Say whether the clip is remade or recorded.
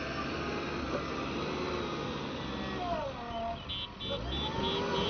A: recorded